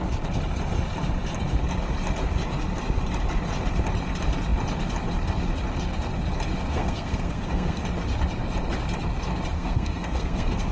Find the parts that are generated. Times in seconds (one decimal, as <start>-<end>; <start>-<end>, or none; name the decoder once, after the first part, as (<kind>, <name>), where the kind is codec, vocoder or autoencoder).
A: 6.7-7.8 (codec, SNAC); 9.5-10.7